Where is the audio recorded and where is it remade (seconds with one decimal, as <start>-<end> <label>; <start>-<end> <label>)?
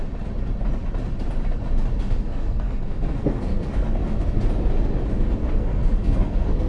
0.0-1.9 recorded; 1.9-4.4 remade; 4.4-5.4 recorded; 5.4-6.7 remade